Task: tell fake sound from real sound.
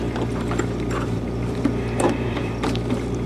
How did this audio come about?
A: fake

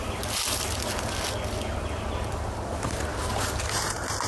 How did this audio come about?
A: real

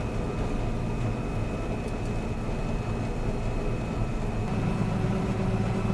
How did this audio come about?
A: real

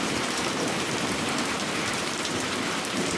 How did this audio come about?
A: fake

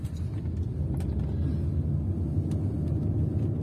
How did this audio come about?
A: real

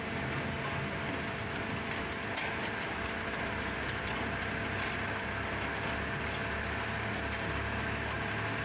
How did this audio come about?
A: real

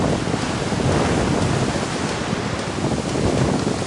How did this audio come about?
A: real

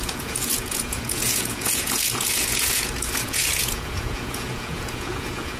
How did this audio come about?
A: fake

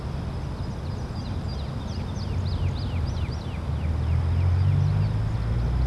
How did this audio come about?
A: real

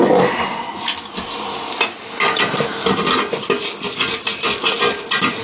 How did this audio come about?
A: real